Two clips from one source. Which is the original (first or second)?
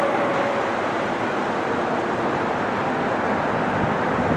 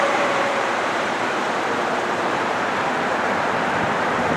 first